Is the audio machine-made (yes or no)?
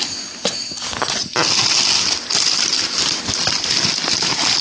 no